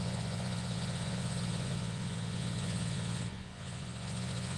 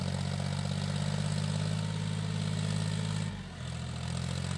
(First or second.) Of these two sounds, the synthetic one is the first